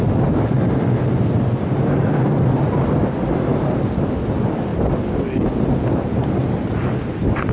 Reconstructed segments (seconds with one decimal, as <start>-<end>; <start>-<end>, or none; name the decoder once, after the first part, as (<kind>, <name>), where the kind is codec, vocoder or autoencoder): none

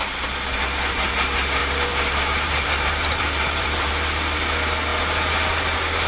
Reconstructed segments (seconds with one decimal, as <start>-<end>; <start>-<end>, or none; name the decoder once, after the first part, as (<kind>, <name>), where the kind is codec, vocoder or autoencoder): 0.5-1.1 (vocoder, BigVGAN v2); 1.6-3.9